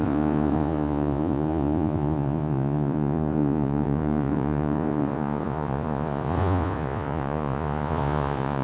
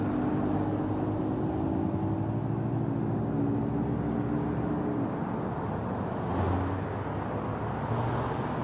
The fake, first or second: first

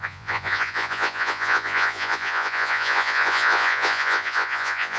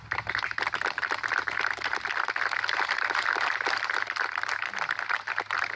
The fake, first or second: first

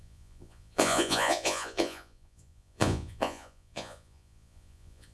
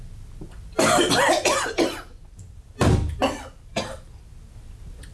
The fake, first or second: first